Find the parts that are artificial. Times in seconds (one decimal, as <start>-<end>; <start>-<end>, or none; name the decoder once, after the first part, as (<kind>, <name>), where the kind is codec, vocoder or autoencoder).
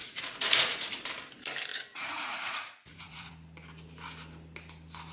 0.0-0.9 (vocoder, Vocos); 1.7-3.3